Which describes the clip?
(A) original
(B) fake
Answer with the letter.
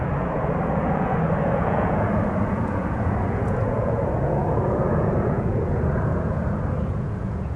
B